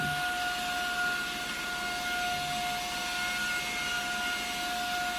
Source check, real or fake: real